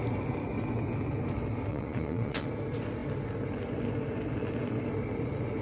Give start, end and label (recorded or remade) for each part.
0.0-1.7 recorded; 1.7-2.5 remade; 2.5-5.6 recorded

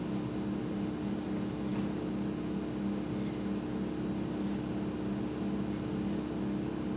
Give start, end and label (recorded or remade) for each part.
0.0-7.0 recorded

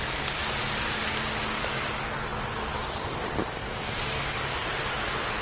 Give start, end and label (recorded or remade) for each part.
0.0-5.4 recorded

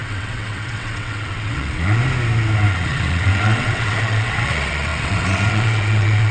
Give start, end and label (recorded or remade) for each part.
0.0-2.0 remade; 2.0-2.7 recorded; 2.7-6.3 remade

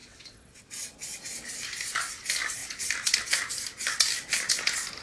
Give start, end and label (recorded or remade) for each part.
0.0-0.6 remade; 0.6-5.0 recorded

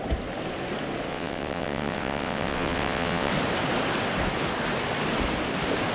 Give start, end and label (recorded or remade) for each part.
0.0-1.1 recorded; 1.1-3.3 remade; 3.3-5.9 recorded

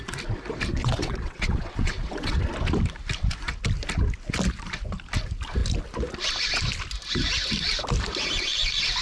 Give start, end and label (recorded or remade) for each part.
0.0-0.8 recorded; 0.8-2.4 remade; 2.4-9.0 recorded

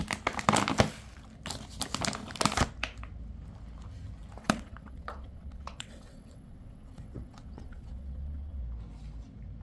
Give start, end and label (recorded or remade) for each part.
0.0-4.4 recorded; 4.4-8.6 remade; 8.6-9.6 recorded